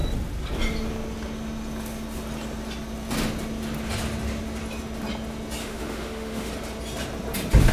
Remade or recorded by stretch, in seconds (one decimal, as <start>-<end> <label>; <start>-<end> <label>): 0.0-5.6 recorded; 5.6-6.5 remade; 6.5-7.7 recorded